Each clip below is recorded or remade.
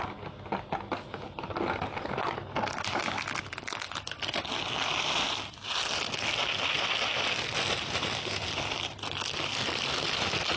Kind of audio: recorded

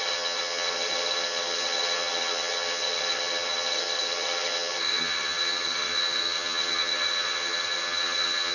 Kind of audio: remade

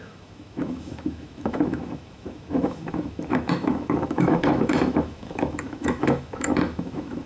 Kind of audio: remade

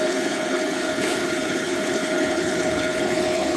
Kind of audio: remade